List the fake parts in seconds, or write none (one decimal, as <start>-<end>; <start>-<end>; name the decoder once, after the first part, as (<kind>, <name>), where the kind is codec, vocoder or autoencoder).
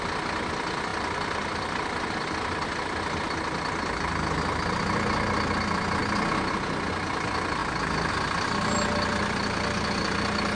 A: none